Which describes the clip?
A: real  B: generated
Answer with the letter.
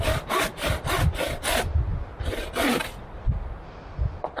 A